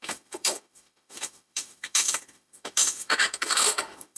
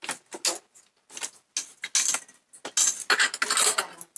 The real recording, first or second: second